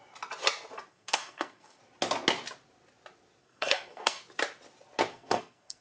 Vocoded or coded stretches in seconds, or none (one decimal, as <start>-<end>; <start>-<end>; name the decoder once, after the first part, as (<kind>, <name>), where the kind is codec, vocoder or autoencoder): 0.9-1.8 (codec, SNAC); 3.4-4.2; 5.1-5.8